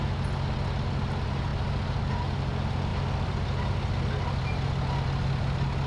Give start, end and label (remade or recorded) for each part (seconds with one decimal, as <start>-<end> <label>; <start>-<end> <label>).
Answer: 0.0-5.9 recorded